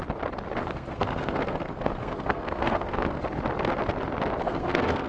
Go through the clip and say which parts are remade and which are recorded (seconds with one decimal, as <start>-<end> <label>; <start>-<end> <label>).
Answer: 0.0-0.6 recorded; 0.6-3.2 remade; 3.2-4.4 recorded; 4.4-5.1 remade